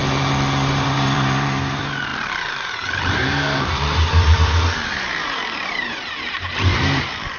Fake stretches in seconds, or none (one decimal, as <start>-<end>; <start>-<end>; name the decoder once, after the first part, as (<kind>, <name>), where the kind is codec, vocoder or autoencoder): 0.7-7.4 (vocoder, BigVGAN v2)